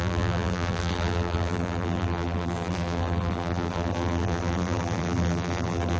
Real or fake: fake